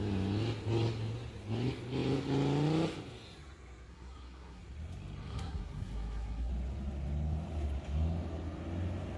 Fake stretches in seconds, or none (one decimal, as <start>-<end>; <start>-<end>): 3.9-4.6; 5.2-6.5